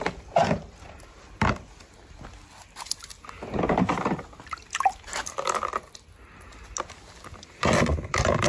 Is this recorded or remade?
recorded